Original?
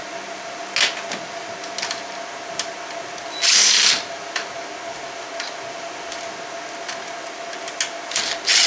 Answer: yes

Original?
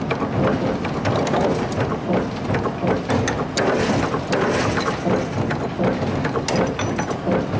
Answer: yes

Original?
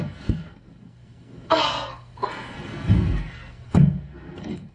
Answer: no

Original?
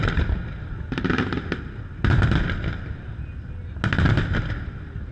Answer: yes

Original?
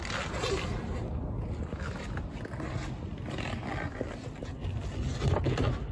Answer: yes